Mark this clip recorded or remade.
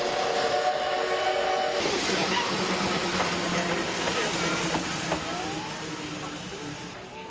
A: recorded